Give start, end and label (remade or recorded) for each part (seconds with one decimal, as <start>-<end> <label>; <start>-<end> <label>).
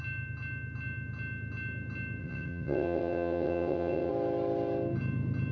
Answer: 0.0-2.2 recorded; 2.2-4.1 remade; 4.1-5.5 recorded